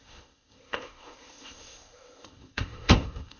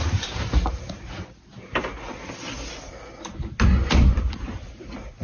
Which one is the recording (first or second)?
second